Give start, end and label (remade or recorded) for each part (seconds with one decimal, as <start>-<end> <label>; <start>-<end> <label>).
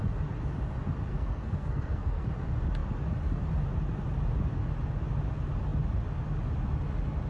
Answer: 0.0-1.1 recorded; 1.1-2.3 remade; 2.3-7.3 recorded